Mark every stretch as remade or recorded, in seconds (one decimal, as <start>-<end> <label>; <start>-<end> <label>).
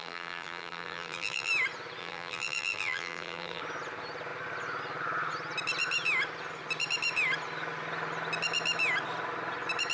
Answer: 0.0-1.5 remade; 1.5-2.0 recorded; 2.0-3.6 remade; 3.6-9.9 recorded